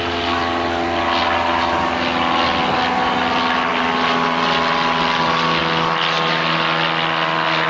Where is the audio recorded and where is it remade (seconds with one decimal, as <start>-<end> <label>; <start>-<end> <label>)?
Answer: 0.0-7.7 recorded